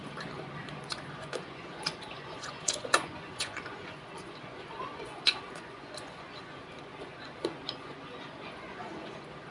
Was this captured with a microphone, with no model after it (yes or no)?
no